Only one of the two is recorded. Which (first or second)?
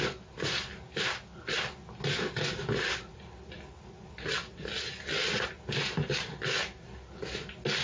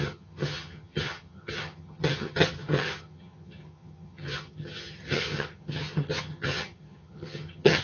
first